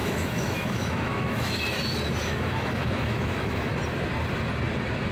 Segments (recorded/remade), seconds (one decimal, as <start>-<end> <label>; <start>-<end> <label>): 0.0-1.6 remade; 1.6-2.2 recorded; 2.2-3.7 remade; 3.7-5.1 recorded